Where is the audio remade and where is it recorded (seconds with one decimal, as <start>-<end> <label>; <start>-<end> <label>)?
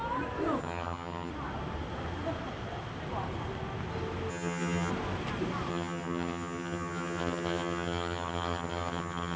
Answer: 0.0-0.6 recorded; 0.6-1.3 remade; 1.3-4.3 recorded; 4.3-4.9 remade; 4.9-5.7 recorded; 5.7-9.4 remade